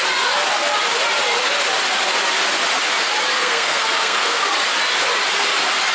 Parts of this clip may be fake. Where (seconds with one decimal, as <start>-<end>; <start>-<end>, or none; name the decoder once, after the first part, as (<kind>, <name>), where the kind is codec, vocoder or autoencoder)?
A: 3.4-4.4 (codec, SNAC)